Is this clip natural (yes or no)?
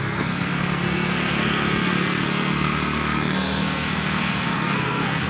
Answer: no